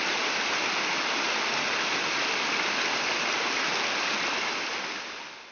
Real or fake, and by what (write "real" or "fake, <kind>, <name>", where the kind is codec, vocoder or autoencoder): real